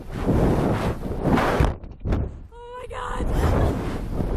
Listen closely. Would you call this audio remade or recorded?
recorded